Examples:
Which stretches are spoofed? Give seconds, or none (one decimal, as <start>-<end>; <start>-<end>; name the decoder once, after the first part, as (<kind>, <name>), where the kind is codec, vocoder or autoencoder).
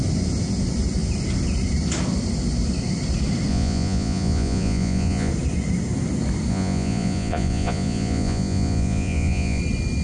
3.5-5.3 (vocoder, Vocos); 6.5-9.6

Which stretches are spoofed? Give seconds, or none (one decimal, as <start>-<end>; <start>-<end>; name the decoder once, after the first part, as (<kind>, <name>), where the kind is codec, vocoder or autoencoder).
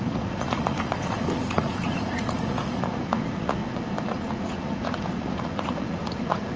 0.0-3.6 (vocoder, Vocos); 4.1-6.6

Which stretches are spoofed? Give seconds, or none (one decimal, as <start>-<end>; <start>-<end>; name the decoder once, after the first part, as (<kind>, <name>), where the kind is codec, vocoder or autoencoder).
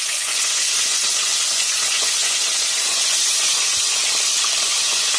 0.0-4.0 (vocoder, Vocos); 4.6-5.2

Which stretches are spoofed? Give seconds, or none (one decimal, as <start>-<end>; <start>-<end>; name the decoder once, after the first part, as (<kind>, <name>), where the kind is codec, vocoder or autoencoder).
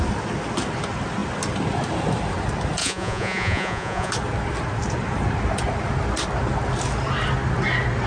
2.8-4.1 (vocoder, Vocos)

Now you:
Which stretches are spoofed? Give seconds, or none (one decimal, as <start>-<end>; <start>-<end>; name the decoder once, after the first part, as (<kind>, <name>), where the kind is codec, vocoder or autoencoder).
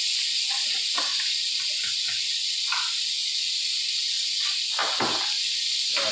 none